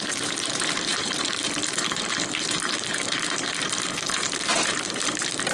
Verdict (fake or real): fake